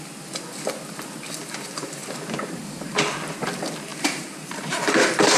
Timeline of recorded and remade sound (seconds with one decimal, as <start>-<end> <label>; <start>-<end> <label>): 0.0-2.0 recorded; 2.0-2.8 remade; 2.8-3.9 recorded; 3.9-4.9 remade; 4.9-5.4 recorded